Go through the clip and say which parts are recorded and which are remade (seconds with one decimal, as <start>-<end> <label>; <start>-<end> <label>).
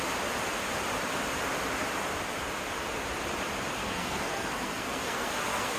0.0-3.8 recorded; 3.8-5.8 remade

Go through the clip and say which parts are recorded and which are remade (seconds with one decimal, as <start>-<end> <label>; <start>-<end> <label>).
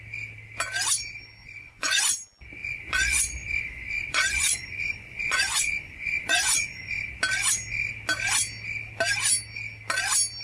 0.0-1.4 recorded; 1.4-2.0 remade; 2.0-2.6 recorded; 2.6-6.9 remade; 6.9-10.4 recorded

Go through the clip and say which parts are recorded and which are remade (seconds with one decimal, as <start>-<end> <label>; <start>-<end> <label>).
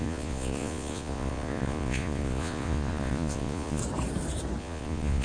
0.0-3.8 remade; 3.8-4.6 recorded; 4.6-5.2 remade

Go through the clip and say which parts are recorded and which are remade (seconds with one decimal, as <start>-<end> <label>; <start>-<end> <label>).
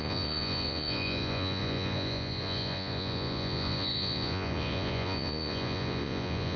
0.0-6.6 remade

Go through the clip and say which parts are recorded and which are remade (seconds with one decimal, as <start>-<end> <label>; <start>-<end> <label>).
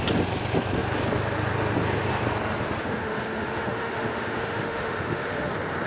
0.0-2.8 recorded; 2.8-5.5 remade; 5.5-5.9 recorded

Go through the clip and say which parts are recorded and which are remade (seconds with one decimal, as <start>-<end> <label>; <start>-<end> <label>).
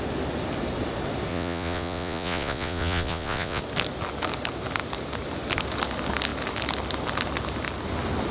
0.0-1.3 recorded; 1.3-3.6 remade; 3.6-8.3 recorded